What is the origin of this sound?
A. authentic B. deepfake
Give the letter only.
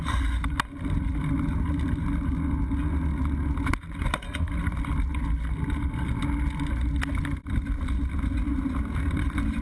A